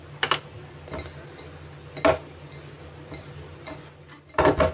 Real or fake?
real